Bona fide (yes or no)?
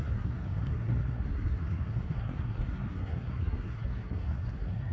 no